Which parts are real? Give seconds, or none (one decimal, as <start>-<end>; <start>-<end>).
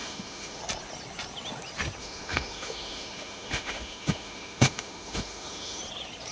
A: 0.6-2.0; 5.8-6.3